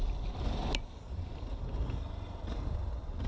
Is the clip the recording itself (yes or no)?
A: yes